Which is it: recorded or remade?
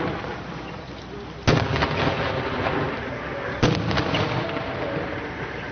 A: recorded